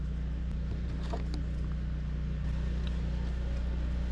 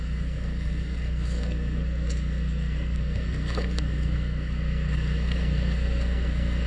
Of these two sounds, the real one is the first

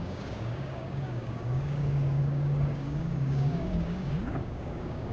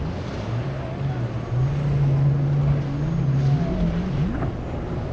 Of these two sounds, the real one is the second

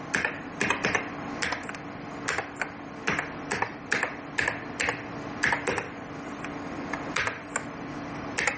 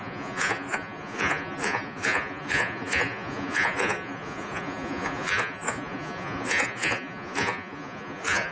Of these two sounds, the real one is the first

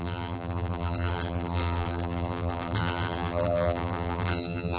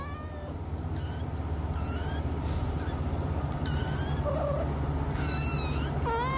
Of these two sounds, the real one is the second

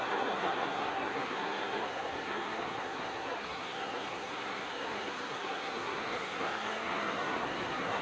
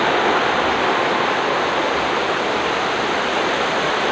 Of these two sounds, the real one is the second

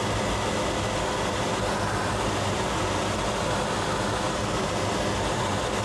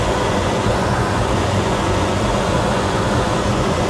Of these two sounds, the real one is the first